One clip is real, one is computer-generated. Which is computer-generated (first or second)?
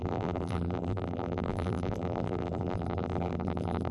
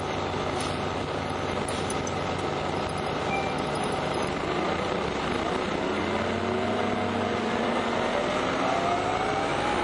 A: first